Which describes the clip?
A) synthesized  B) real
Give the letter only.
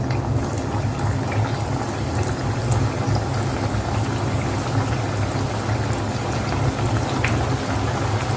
B